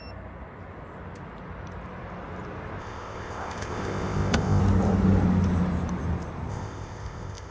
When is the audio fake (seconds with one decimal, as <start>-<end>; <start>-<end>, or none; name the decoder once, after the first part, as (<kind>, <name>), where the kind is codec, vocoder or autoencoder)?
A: 2.8-4.6 (codec, ZipCodec); 6.5-7.5